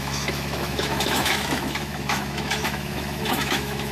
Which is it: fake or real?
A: fake